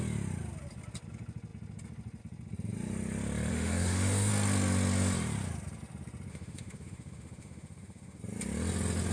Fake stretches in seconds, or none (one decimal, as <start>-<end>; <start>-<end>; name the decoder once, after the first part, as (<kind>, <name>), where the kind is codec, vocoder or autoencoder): 3.5-4.3 (autoencoder, DAC-VAE); 6.3-8.2